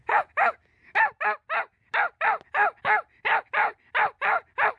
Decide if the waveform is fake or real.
real